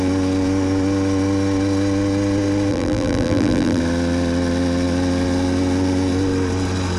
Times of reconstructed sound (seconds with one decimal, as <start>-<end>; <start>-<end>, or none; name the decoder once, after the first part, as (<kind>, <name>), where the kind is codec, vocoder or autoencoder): 2.7-3.8 (vocoder, BigVGAN v2)